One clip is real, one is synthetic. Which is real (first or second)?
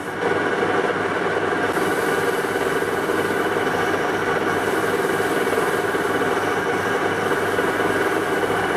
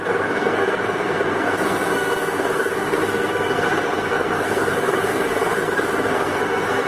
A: first